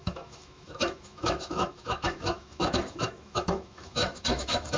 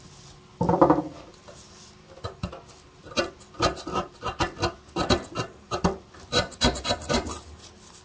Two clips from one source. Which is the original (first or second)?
second